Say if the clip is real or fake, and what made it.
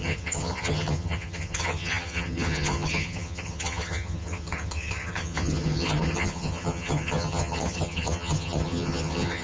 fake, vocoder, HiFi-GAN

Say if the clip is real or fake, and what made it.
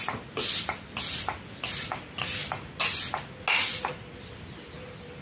real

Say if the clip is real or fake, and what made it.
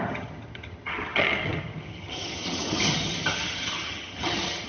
fake, vocoder, HiFi-GAN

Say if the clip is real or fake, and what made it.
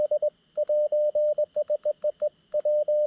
real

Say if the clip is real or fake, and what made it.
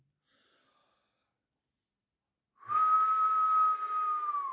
real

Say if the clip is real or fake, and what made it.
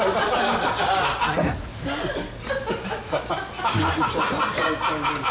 real